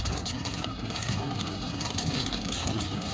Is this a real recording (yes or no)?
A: no